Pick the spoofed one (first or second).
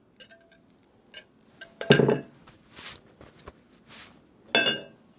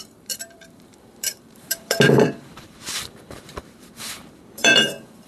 second